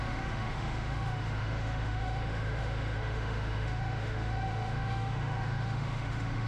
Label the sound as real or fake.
fake